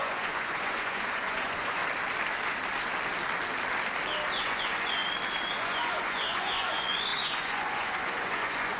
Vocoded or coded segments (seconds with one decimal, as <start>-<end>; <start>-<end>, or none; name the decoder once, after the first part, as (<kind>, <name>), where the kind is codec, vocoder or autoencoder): 0.0-1.8 (vocoder, Vocos); 4.3-5.0; 5.6-8.8